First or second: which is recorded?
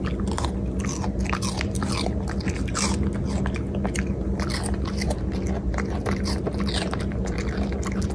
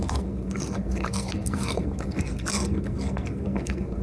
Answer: first